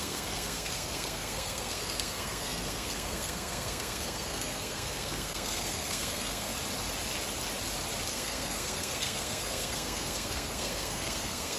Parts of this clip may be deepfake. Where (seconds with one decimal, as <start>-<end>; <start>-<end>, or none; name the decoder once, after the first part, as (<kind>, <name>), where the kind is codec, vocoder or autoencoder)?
0.0-6.5 (codec, SNAC); 8.1-11.6